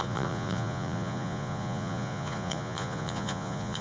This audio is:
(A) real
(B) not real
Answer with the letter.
B